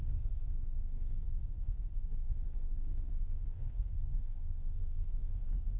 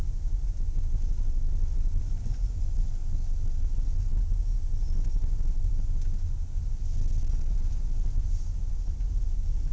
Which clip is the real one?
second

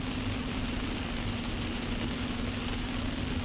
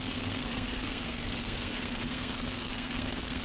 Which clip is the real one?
first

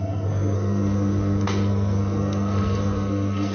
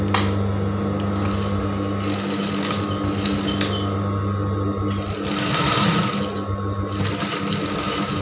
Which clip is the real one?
second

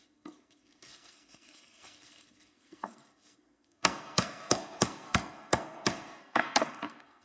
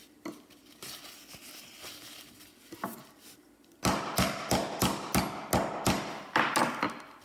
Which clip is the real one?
second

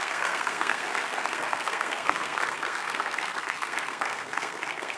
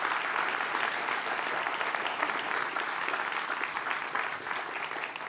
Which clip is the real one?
second